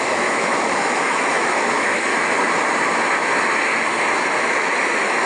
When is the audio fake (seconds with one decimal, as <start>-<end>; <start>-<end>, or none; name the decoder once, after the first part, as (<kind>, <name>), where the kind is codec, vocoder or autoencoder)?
0.0-2.1 (autoencoder, DAC-VAE); 4.4-5.3